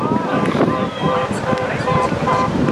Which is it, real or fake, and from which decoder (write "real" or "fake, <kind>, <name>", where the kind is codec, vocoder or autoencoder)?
fake, vocoder, BigVGAN v2